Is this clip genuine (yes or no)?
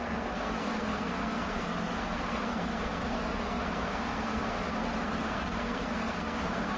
no